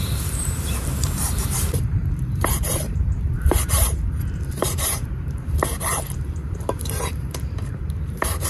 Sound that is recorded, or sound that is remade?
remade